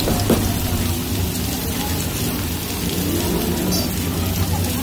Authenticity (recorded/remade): recorded